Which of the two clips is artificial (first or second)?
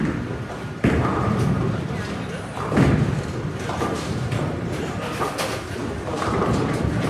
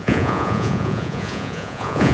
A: second